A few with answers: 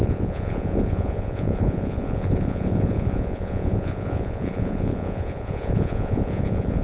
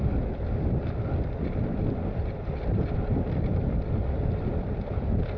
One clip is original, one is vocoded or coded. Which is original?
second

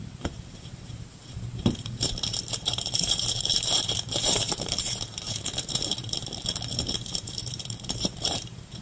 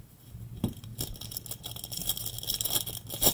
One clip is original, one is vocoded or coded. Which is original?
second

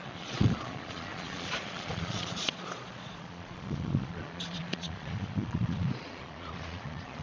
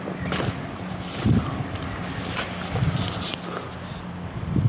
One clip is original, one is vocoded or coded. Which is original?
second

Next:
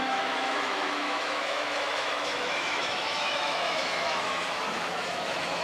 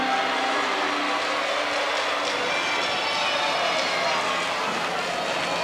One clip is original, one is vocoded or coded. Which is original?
second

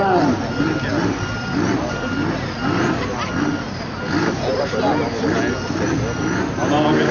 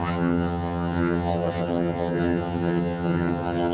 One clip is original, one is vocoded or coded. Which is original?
first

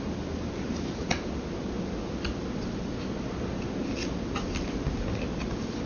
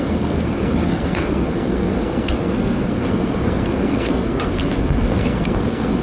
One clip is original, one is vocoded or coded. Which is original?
first